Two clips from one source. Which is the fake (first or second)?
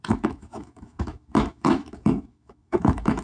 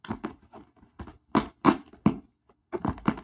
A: first